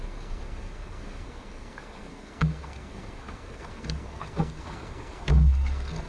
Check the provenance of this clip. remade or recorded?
remade